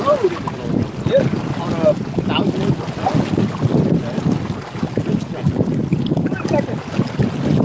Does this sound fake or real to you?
real